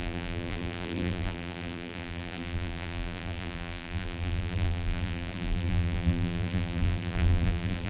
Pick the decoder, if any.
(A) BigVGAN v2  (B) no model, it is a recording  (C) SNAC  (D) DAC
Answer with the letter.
A